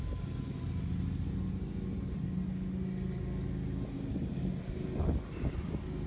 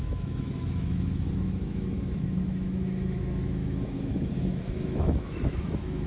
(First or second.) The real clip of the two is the first